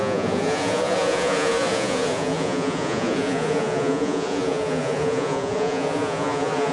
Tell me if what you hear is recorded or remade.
remade